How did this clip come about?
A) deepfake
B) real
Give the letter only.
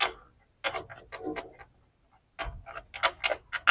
B